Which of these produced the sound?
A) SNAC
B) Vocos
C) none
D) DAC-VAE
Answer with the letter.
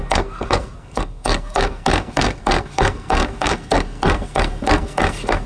A